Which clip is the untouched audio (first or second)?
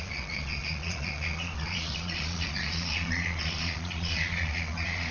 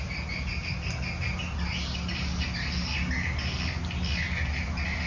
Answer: second